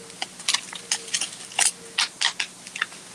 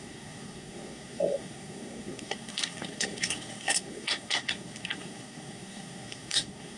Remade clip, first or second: second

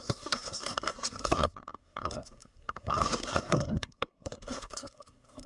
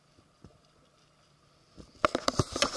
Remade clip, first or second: first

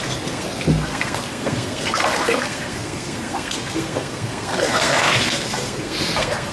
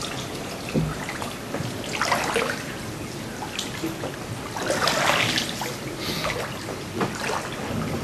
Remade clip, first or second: first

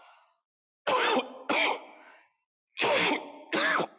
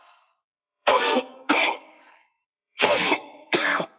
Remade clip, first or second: second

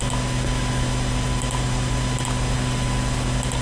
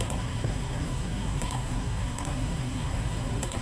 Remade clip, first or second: second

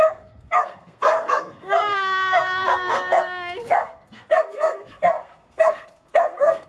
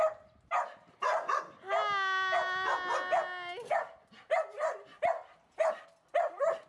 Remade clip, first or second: first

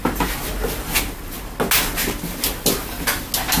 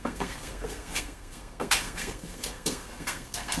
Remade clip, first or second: second